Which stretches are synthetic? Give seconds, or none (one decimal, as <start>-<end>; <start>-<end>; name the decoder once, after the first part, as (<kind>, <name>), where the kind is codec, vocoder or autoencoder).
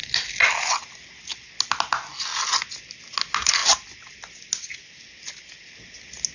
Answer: none